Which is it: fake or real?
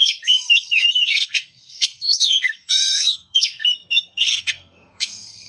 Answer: fake